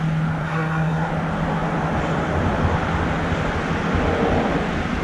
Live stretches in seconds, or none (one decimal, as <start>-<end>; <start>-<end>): 0.0-0.4; 1.1-5.0